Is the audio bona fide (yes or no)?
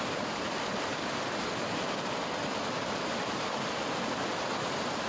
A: yes